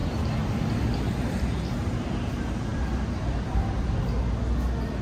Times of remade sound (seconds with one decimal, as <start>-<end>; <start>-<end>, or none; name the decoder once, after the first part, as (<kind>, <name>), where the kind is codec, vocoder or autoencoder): 0.0-0.6 (vocoder, BigVGAN v2); 2.7-4.2